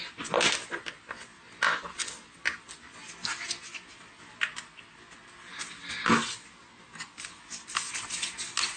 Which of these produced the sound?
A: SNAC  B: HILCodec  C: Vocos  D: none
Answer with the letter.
D